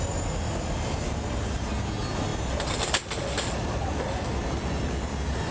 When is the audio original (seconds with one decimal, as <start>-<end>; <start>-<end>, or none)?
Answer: 0.0-5.5